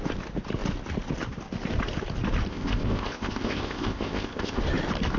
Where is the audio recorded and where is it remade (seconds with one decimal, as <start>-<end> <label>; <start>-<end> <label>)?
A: 0.0-2.5 recorded; 2.5-4.6 remade; 4.6-5.2 recorded